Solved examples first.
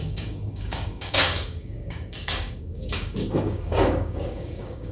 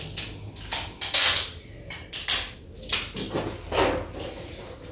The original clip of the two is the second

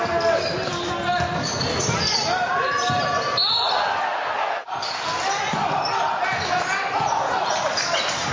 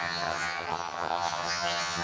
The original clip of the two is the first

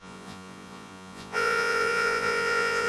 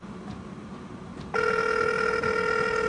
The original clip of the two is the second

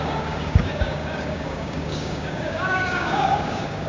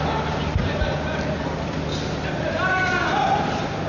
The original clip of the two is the second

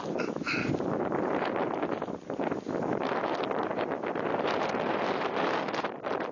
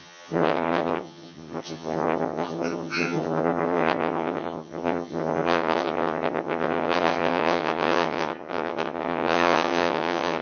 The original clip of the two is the first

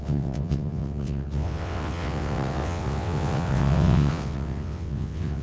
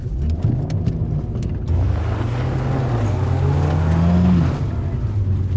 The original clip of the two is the second